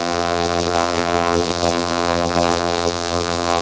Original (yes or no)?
no